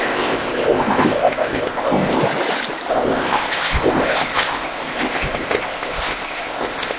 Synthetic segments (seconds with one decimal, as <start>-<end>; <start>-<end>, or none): 0.0-2.2; 2.9-7.0